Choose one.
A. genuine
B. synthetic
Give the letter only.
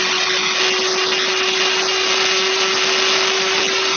A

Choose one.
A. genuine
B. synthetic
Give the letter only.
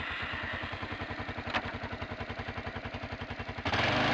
A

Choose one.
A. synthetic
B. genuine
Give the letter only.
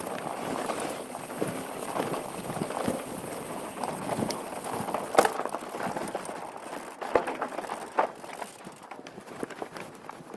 B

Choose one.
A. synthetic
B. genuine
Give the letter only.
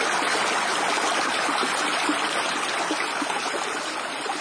B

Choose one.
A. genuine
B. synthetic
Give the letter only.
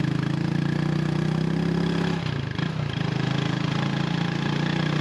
A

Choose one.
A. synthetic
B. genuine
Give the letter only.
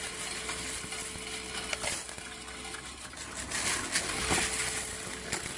B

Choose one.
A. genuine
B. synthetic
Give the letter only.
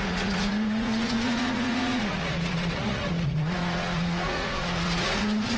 B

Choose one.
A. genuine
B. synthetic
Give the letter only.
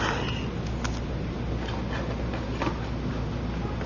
A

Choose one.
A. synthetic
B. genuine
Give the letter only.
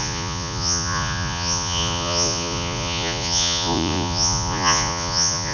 A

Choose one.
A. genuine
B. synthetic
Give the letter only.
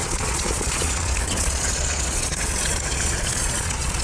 B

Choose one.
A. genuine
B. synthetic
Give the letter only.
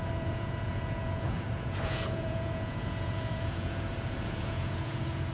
B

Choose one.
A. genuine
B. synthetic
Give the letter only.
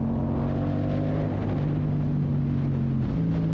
A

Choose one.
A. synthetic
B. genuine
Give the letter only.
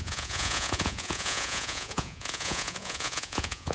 A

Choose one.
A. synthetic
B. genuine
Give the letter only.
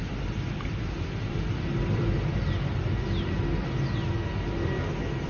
B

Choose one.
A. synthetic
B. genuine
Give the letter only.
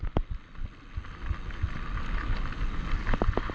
B